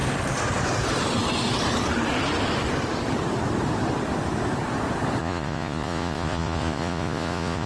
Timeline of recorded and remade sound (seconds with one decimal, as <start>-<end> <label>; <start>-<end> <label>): 0.0-5.2 recorded; 5.2-7.7 remade